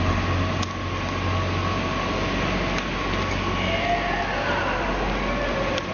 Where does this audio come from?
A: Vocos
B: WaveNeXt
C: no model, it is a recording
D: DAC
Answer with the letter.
C